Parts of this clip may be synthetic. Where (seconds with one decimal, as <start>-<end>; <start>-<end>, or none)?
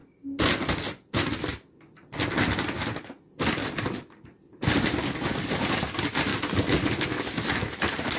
4.5-6.3; 7.5-8.2